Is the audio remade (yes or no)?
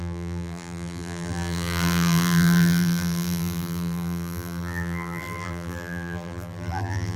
yes